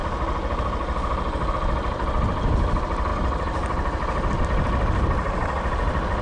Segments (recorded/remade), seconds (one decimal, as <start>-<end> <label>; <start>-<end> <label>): 0.0-6.2 recorded